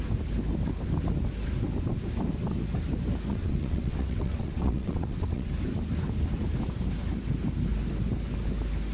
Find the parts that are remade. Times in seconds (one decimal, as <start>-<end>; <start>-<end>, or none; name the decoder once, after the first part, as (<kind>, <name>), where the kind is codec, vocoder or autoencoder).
3.3-5.5 (vocoder, WaveNeXt)